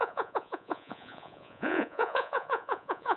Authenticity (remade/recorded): remade